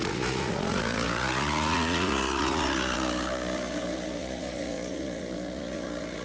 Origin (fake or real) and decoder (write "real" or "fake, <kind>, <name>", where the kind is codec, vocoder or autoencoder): fake, vocoder, Vocos